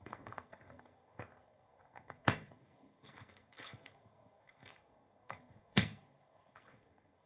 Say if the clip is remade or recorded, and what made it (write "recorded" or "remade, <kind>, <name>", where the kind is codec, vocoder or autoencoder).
remade, codec, SNAC